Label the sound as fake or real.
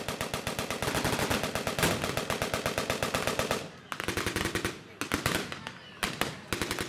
real